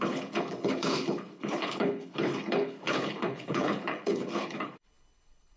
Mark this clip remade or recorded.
remade